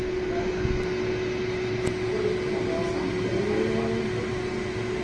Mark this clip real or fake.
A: real